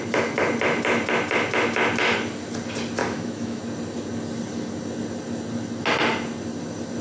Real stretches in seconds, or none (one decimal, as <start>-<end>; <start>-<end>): 0.0-3.0; 3.6-7.0